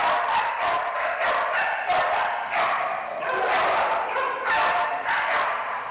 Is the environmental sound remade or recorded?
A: recorded